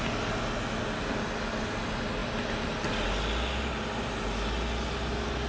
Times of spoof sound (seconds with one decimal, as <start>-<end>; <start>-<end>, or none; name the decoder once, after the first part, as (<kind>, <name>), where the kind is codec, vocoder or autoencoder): none